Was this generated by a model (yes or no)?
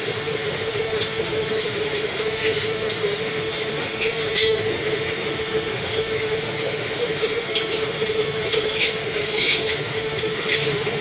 yes